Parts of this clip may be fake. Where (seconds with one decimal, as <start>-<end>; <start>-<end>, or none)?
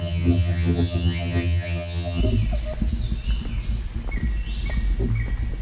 0.0-2.2